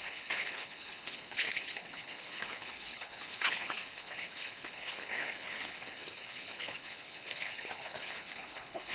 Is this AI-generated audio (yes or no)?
yes